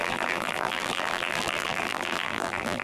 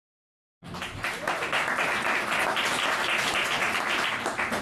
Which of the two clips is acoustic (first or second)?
second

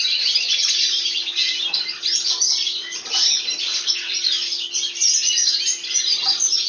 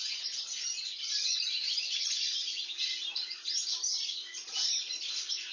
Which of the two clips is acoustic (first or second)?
first